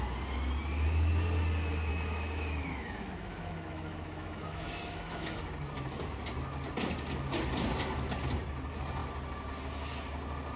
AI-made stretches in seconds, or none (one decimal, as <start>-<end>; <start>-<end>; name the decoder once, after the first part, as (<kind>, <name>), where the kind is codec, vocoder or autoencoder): 1.9-5.4 (autoencoder, DAC-VAE)